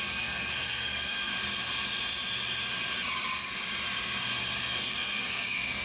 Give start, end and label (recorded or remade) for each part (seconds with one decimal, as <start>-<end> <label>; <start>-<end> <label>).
0.0-1.3 remade; 1.3-4.8 recorded; 4.8-5.8 remade